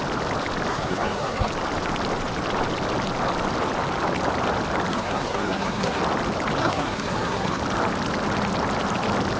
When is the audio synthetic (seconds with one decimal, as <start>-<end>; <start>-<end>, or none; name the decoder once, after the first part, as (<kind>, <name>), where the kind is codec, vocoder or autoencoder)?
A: 0.7-1.5 (codec, SNAC); 4.9-6.0; 6.6-7.6